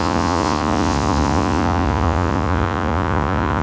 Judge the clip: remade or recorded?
remade